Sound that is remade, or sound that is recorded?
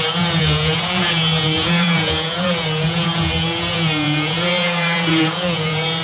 remade